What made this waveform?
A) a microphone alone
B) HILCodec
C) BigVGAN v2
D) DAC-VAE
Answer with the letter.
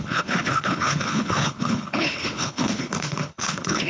B